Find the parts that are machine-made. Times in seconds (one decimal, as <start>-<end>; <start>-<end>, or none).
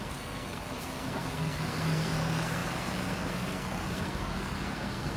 0.0-5.2